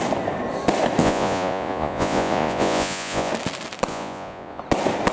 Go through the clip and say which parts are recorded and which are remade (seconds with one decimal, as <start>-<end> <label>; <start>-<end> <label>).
0.0-1.0 recorded; 1.0-3.3 remade; 3.3-3.9 recorded; 3.9-4.6 remade; 4.6-5.1 recorded